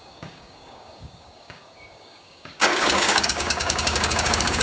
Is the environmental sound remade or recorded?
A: remade